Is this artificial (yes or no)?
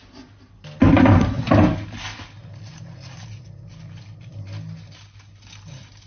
no